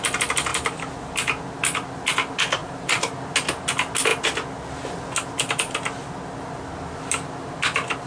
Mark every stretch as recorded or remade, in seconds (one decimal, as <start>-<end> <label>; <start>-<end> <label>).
0.0-0.5 recorded; 0.5-1.0 remade; 1.0-2.6 recorded; 2.6-3.1 remade; 3.1-8.1 recorded